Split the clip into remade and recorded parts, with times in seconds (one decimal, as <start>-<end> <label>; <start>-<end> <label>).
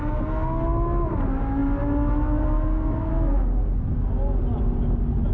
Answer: 0.0-5.3 recorded